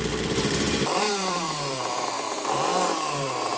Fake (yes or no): yes